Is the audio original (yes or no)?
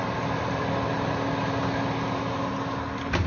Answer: yes